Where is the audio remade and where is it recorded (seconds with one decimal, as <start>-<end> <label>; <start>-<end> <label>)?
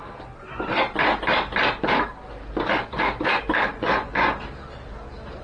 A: 0.0-3.7 recorded; 3.7-4.3 remade; 4.3-5.4 recorded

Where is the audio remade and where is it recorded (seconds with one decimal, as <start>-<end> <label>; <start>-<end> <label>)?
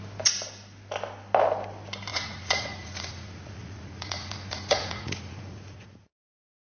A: 0.0-2.1 recorded; 2.1-6.1 remade; 6.1-6.7 recorded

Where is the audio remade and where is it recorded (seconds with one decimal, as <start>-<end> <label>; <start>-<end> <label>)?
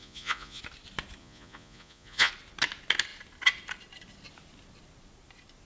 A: 0.0-0.6 remade; 0.6-1.2 recorded; 1.2-2.3 remade; 2.3-5.7 recorded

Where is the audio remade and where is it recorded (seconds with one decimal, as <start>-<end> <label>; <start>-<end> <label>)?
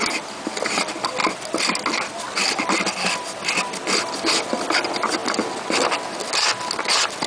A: 0.0-7.3 recorded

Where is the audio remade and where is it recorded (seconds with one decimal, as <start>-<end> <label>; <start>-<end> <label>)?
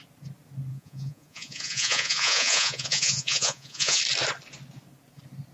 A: 0.0-0.7 recorded; 0.7-4.0 remade; 4.0-5.5 recorded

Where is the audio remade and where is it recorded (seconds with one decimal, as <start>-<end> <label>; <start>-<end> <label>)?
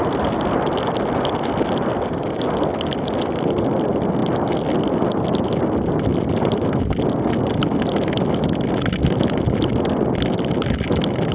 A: 0.0-11.3 recorded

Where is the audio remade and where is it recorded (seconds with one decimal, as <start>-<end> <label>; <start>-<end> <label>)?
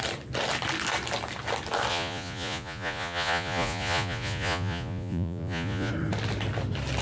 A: 0.0-1.9 recorded; 1.9-5.9 remade; 5.9-7.0 recorded